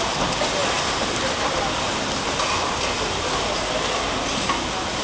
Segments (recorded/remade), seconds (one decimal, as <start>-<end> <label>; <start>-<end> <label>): 0.0-5.0 recorded